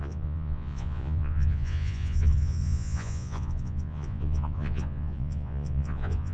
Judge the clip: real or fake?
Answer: fake